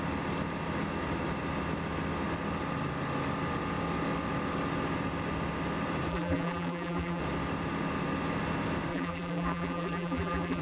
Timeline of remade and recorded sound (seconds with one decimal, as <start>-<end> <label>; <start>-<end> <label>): 0.0-6.1 recorded; 6.1-7.2 remade; 7.2-8.9 recorded; 8.9-10.6 remade